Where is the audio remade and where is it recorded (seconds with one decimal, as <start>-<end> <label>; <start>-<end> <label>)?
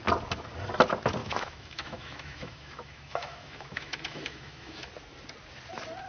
0.0-1.2 recorded; 1.2-4.9 remade; 4.9-6.1 recorded